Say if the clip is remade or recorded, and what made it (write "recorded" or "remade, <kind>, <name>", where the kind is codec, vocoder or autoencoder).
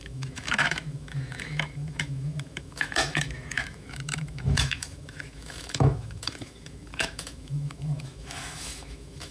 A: remade, autoencoder, DAC-VAE